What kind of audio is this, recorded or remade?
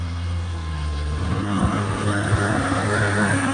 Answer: remade